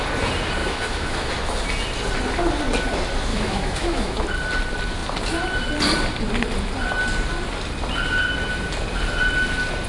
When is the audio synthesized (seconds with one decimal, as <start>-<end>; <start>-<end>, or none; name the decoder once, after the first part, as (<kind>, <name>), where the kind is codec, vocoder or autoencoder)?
0.6-1.3 (autoencoder, DAC-VAE); 3.3-4.2